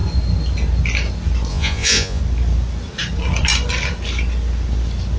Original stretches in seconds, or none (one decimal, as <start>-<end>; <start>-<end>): 0.0-1.5; 2.2-5.2